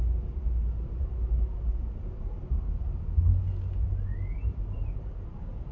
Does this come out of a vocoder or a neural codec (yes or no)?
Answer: no